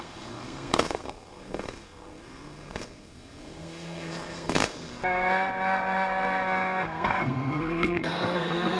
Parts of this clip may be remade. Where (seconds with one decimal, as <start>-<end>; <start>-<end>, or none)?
0.0-8.8